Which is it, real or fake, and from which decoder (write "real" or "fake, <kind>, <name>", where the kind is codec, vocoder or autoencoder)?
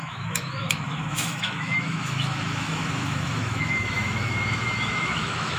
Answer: fake, autoencoder, DAC-VAE